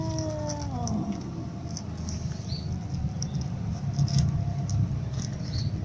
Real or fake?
real